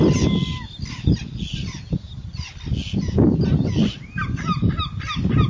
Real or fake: real